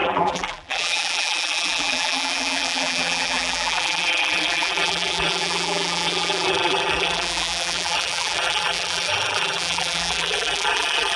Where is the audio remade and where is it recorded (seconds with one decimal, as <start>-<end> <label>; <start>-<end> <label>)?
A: 0.0-11.2 remade